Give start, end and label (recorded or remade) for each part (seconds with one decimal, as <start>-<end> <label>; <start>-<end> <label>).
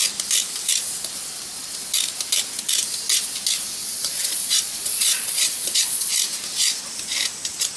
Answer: 0.0-3.8 recorded; 3.8-6.1 remade; 6.1-7.8 recorded